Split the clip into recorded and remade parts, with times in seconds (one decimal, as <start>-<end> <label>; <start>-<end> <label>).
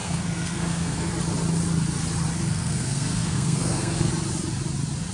0.0-1.1 remade; 1.1-2.4 recorded; 2.4-4.1 remade; 4.1-5.1 recorded